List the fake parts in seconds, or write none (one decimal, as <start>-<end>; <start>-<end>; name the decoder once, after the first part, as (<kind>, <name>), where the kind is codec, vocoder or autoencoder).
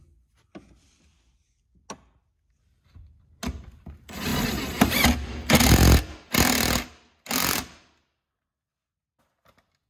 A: none